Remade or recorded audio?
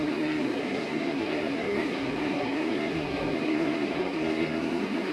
remade